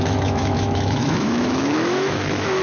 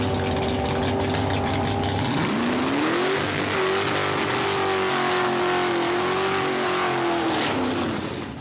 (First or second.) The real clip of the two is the second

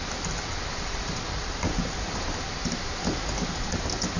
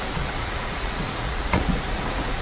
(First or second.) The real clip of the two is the first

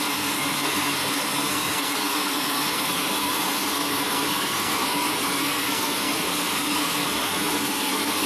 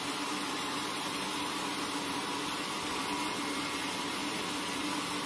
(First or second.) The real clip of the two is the second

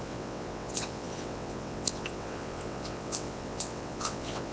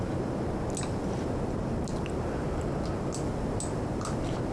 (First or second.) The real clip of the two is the second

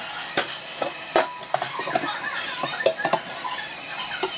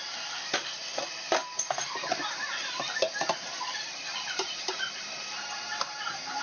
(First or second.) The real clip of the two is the first